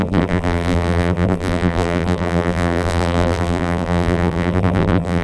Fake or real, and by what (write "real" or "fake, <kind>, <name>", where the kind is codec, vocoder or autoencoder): fake, vocoder, BigVGAN v2